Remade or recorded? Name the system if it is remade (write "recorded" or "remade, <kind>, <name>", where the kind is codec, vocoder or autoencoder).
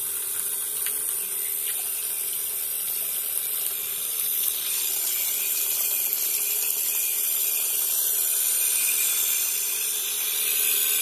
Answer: recorded